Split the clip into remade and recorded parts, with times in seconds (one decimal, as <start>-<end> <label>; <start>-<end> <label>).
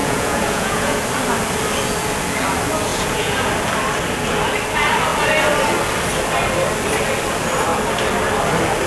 0.0-1.0 remade; 1.0-2.9 recorded; 2.9-3.5 remade; 3.5-8.9 recorded